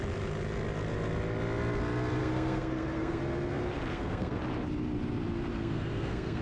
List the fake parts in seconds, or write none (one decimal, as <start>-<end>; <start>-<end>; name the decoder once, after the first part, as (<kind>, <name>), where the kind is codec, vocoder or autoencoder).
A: 2.2-3.2 (codec, SNAC); 3.9-4.4; 5.5-6.4